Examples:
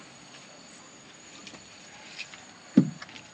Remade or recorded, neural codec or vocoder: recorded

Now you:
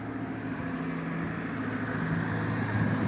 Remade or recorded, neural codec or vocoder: recorded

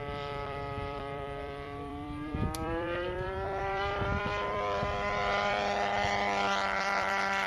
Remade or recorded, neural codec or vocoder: remade, vocoder, BigVGAN v2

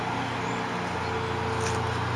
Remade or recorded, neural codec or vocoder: recorded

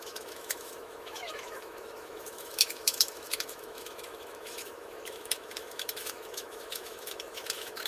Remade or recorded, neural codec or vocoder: remade, autoencoder, DAC-VAE